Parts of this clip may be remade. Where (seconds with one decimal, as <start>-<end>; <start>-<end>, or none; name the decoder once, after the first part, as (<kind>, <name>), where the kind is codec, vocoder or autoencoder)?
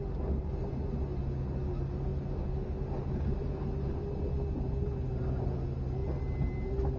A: none